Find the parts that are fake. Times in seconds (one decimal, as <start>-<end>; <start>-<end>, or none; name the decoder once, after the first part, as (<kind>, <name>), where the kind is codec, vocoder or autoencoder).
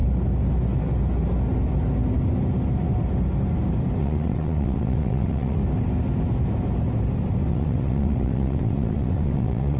4.0-5.6 (vocoder, WaveNeXt); 7.5-9.8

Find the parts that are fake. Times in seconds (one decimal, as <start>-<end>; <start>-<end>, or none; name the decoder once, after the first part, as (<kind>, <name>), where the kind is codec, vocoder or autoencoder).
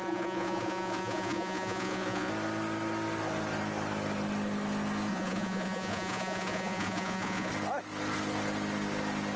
0.0-2.3 (vocoder, Vocos); 5.1-7.5